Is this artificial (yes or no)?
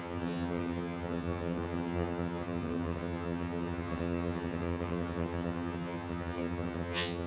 yes